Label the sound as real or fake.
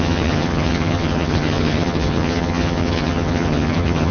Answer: fake